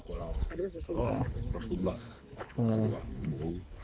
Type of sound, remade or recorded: remade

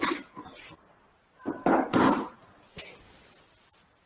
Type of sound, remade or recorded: recorded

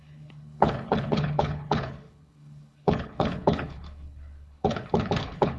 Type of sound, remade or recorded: remade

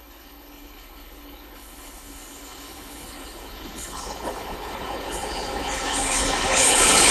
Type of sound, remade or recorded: remade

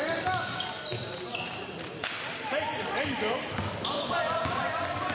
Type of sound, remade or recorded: recorded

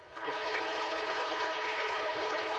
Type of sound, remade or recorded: remade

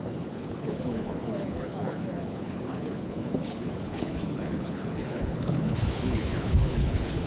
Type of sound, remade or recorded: remade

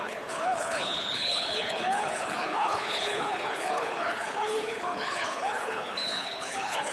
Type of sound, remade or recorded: remade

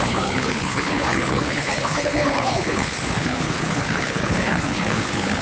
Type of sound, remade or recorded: remade